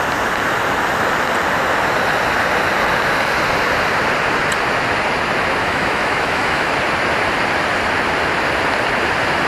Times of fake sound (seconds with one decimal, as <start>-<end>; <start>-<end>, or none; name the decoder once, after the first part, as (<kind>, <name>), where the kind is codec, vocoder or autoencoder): 5.6-6.7 (autoencoder, DAC-VAE)